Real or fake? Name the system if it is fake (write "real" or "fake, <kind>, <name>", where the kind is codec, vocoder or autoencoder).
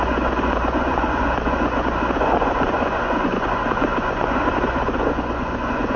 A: fake, vocoder, Vocos